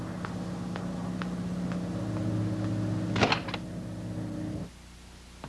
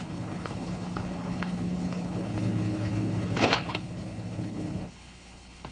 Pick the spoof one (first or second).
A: second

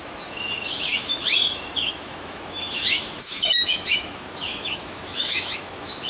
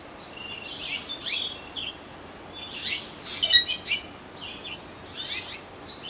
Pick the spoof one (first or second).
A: first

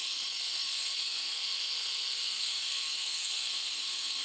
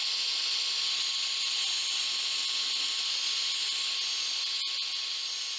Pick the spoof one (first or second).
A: first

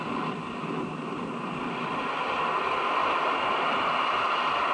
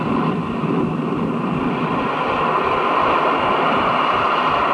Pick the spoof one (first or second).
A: second